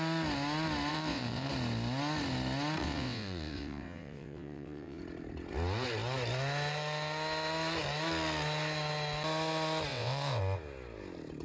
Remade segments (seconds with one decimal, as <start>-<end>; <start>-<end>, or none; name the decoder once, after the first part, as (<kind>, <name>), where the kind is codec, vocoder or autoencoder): 0.9-1.5 (vocoder, WaveNeXt); 2.8-5.0; 9.9-10.4